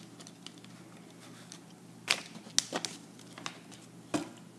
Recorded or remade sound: recorded